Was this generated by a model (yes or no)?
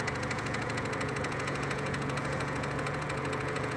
yes